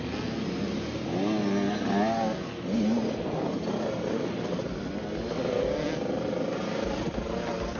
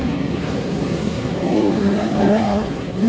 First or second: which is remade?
second